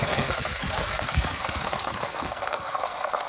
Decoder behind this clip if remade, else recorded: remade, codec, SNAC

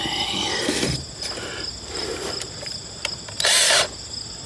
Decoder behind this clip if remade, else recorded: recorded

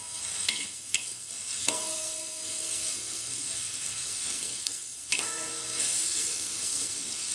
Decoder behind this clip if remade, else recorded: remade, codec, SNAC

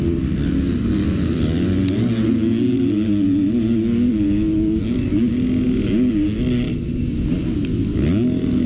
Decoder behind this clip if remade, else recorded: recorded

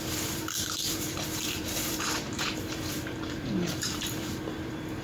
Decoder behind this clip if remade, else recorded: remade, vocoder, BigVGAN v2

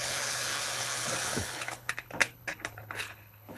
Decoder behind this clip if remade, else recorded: remade, codec, HILCodec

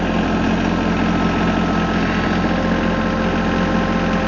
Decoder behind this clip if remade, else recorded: recorded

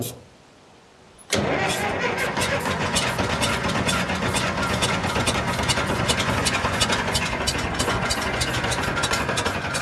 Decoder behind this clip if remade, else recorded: remade, vocoder, Vocos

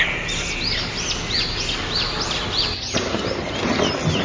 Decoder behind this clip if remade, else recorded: recorded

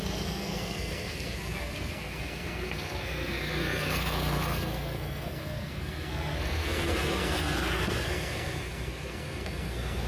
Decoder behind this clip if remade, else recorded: remade, codec, SNAC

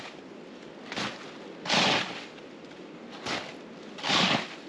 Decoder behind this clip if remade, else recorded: recorded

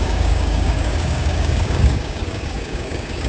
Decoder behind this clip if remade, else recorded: remade, codec, DAC